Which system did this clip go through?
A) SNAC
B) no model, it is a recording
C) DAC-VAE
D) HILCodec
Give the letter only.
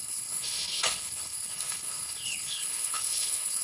D